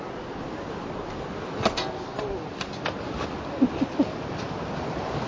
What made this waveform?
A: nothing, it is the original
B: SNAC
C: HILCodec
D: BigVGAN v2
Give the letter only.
A